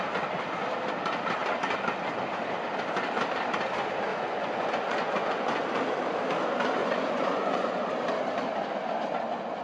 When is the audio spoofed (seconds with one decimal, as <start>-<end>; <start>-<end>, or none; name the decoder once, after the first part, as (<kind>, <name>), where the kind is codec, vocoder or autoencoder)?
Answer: 4.1-5.6 (vocoder, Vocos); 6.8-7.8